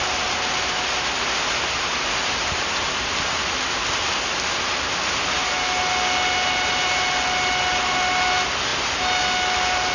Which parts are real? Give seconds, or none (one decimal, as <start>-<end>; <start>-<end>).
0.0-9.9